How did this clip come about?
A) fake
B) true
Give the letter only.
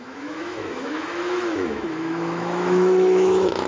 A